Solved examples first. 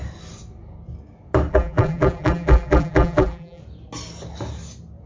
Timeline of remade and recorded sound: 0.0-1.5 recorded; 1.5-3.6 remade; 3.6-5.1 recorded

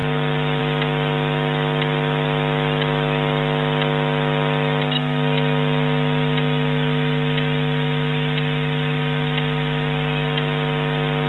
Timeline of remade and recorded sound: 0.0-11.3 recorded